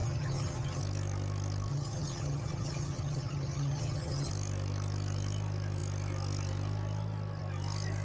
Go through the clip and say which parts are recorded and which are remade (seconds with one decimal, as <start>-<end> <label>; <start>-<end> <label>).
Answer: 0.0-0.8 remade; 0.8-1.7 recorded; 1.7-4.3 remade; 4.3-8.0 recorded